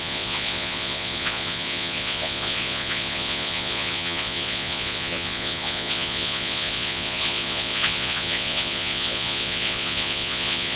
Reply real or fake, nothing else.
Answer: fake